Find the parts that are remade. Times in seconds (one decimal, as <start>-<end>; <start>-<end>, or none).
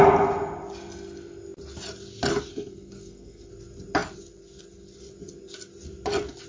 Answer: 2.5-3.5